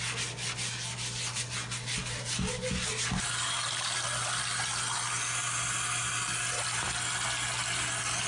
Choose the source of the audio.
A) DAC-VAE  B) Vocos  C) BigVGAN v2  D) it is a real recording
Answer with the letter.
D